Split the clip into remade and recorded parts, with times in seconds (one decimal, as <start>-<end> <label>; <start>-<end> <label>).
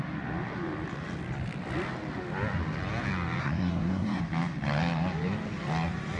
0.0-3.4 recorded; 3.4-4.2 remade; 4.2-6.2 recorded